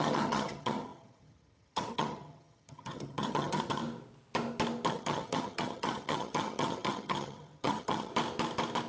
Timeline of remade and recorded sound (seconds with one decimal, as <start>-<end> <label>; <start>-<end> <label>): 0.0-3.8 remade; 3.8-4.9 recorded; 4.9-8.1 remade; 8.1-8.9 recorded